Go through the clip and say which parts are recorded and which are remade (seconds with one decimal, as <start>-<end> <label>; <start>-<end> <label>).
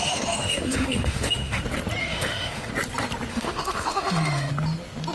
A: 0.0-1.6 remade; 1.6-2.0 recorded; 2.0-2.7 remade; 2.7-3.3 recorded; 3.3-4.5 remade; 4.5-5.1 recorded